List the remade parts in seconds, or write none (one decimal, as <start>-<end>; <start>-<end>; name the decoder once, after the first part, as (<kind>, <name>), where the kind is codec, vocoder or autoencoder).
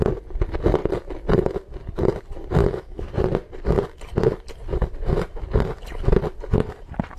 2.6-3.1 (autoencoder, DAC-VAE)